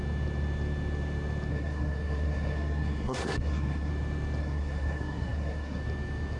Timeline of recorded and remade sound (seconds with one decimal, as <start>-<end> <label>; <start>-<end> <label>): 0.0-1.5 recorded; 1.5-3.9 remade; 3.9-4.4 recorded; 4.4-5.8 remade; 5.8-6.4 recorded